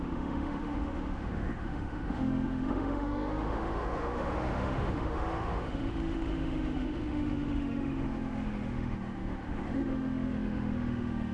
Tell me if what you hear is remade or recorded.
remade